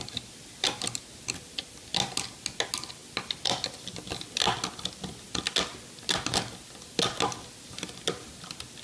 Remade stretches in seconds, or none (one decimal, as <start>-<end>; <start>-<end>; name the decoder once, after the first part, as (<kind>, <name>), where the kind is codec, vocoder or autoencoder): none